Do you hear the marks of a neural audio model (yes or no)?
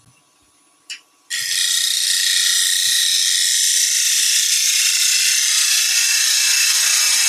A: no